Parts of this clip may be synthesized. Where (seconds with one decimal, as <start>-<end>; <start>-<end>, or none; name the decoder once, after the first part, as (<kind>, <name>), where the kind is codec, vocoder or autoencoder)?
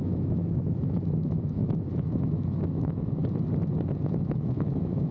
0.0-3.2 (autoencoder, DAC-VAE); 4.0-5.1